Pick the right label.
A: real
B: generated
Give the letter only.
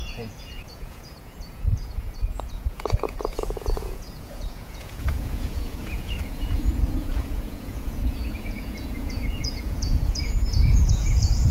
B